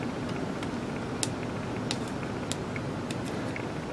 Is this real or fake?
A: real